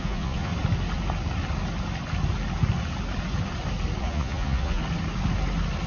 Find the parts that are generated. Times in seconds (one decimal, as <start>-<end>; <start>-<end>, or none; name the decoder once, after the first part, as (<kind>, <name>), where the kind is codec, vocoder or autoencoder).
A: 0.0-0.5 (vocoder, Vocos); 4.0-4.8